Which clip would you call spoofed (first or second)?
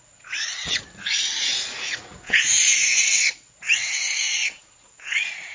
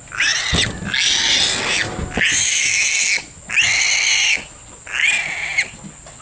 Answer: first